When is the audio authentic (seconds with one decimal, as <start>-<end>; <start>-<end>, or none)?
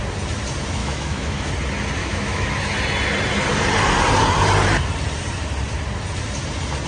0.0-0.8; 1.5-2.0; 2.5-6.9